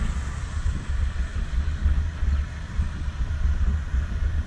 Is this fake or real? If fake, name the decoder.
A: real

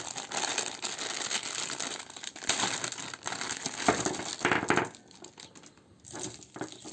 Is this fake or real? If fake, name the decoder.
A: real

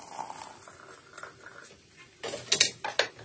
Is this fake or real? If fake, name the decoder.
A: real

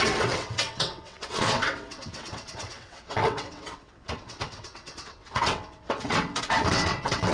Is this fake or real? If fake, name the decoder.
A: fake, vocoder, WaveNeXt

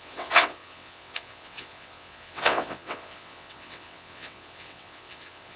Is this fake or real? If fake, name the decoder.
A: fake, vocoder, WaveNeXt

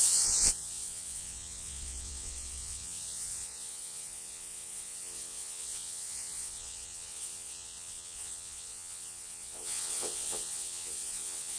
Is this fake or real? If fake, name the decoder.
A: fake, vocoder, WaveNeXt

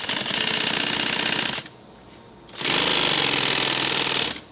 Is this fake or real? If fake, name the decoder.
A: real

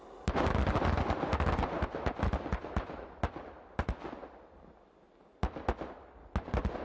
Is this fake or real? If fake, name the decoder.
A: real